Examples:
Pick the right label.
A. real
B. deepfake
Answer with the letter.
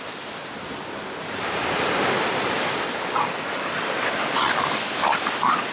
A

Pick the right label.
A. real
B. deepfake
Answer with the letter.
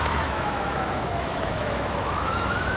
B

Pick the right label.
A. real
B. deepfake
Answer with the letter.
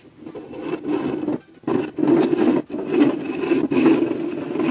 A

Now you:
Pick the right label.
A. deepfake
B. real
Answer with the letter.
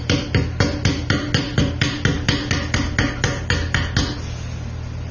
B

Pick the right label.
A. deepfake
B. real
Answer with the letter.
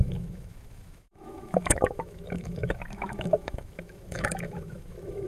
A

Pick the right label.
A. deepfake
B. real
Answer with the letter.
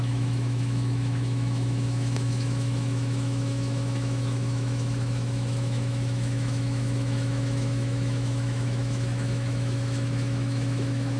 A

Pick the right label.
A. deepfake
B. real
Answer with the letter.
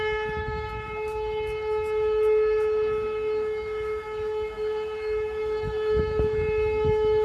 A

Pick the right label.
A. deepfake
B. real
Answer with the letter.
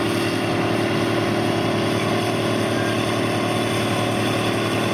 B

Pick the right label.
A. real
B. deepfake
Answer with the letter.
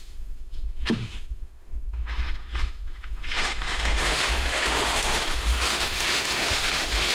B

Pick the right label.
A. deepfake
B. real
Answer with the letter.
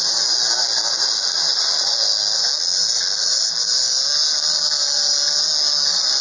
B